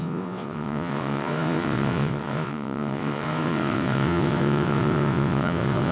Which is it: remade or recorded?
remade